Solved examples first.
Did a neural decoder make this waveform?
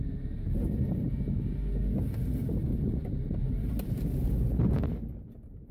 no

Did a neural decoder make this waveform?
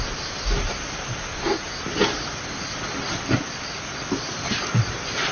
no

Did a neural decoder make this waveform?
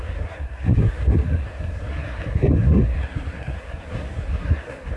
yes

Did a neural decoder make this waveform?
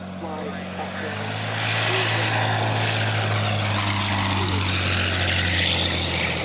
no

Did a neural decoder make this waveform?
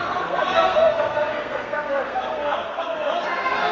yes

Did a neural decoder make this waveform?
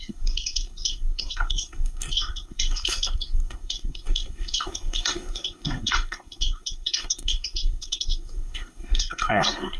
yes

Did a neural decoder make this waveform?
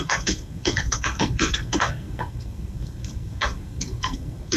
yes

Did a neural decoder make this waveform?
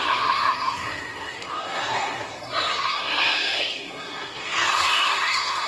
yes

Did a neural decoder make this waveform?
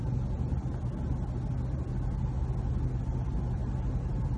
no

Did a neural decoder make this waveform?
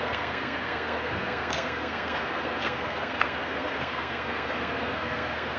yes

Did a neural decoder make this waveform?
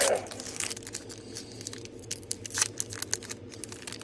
no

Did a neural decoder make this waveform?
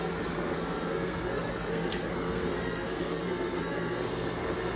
yes